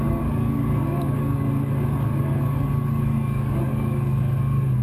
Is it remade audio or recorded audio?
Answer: remade